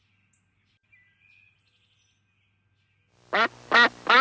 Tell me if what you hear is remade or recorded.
recorded